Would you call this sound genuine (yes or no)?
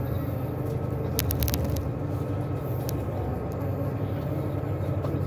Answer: yes